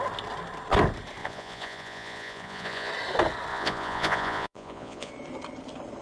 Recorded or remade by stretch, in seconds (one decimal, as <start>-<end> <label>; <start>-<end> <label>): 0.0-1.2 recorded; 1.2-2.9 remade; 2.9-3.5 recorded; 3.5-5.1 remade; 5.1-6.0 recorded

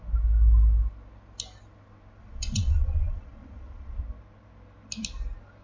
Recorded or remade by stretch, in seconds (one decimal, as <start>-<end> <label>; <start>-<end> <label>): 0.0-2.2 recorded; 2.2-4.0 remade; 4.0-5.6 recorded

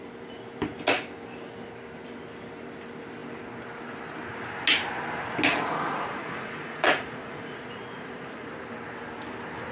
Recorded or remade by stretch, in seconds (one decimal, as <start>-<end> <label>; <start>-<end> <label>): 0.0-5.5 recorded; 5.5-8.5 remade; 8.5-9.7 recorded